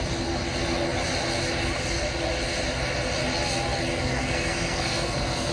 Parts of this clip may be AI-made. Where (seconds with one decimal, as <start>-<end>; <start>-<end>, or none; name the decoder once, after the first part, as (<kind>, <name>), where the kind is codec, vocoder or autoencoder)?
3.9-5.5 (codec, SNAC)